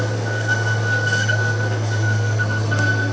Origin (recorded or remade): remade